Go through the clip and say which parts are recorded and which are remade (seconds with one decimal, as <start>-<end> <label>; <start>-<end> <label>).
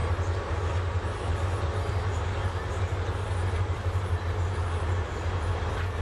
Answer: 0.0-6.0 recorded